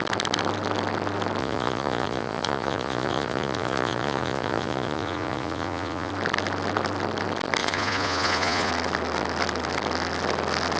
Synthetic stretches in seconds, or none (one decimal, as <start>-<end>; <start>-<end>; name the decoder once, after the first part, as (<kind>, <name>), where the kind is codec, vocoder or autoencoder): 1.4-6.1 (vocoder, Vocos); 7.6-8.7